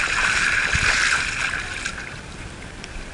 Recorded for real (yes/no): yes